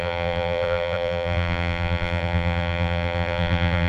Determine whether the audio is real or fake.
fake